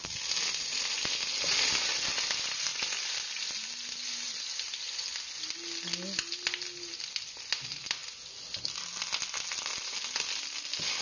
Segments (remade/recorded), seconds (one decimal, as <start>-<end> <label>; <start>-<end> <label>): 0.0-11.0 recorded